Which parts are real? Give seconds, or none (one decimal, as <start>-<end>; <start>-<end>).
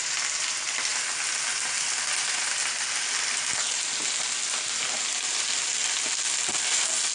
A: 0.0-7.1